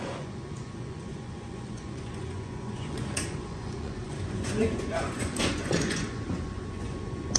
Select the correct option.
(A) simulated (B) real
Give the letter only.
A